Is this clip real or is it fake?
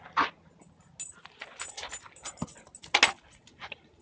real